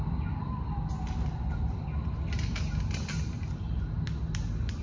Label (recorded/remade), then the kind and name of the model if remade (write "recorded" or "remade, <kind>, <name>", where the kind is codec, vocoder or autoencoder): recorded